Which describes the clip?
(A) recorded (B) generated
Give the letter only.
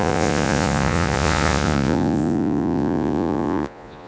B